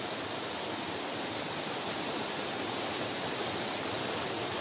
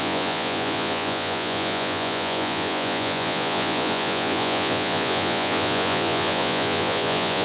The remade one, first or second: second